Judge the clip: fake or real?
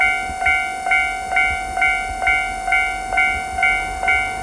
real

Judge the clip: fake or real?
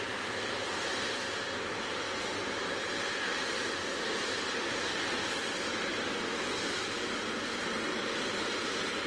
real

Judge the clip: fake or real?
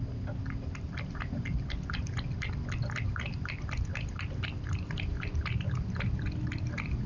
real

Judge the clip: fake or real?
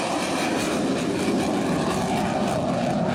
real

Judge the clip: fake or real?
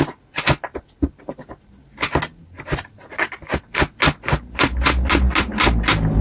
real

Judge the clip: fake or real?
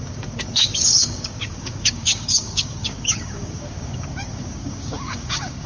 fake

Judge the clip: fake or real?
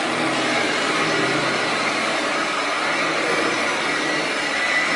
real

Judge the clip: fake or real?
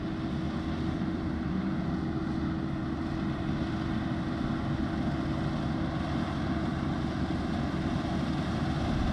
real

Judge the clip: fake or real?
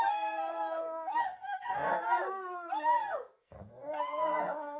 fake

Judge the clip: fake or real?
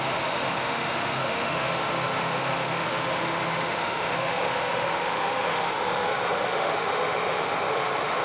fake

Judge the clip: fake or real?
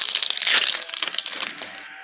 real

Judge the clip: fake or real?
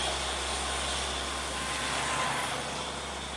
real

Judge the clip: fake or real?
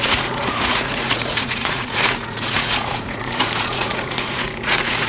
fake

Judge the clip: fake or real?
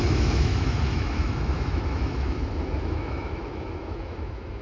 fake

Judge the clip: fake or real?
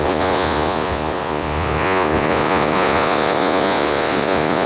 fake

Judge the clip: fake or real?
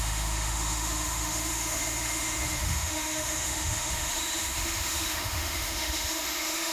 fake